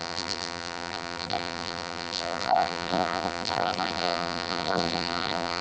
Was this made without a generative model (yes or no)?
no